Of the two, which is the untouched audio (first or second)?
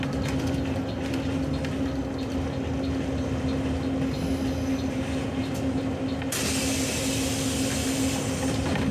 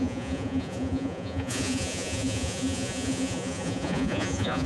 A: first